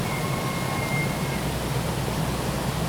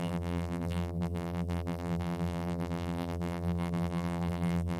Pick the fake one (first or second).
second